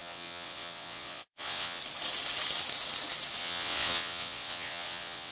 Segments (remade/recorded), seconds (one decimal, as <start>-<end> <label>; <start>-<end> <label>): 0.0-1.8 remade; 1.8-3.4 recorded; 3.4-5.3 remade